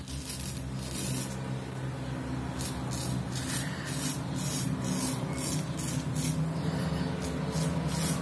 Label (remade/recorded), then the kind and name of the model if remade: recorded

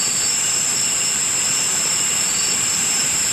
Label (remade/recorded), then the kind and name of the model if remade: remade, vocoder, BigVGAN v2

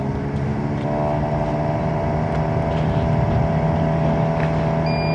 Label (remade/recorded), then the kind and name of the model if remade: recorded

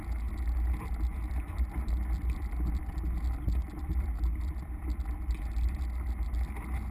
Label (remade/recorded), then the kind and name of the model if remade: recorded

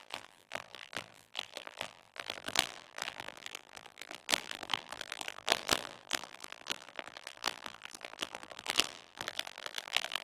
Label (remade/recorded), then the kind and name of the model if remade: remade, vocoder, BigVGAN v2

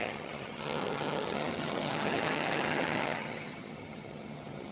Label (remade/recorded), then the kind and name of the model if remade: remade, vocoder, HiFi-GAN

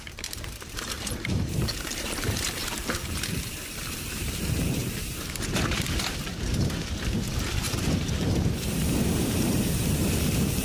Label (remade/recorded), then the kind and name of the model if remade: remade, vocoder, BigVGAN v2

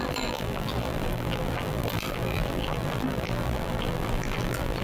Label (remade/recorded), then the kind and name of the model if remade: remade, vocoder, BigVGAN v2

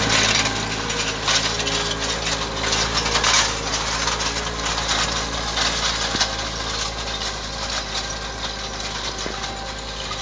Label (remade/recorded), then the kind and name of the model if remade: recorded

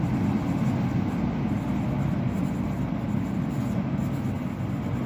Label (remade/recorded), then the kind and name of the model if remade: recorded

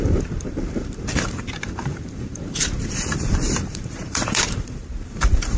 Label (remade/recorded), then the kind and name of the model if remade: remade, vocoder, BigVGAN v2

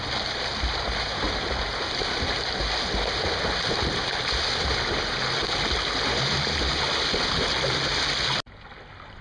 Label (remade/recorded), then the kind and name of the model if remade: recorded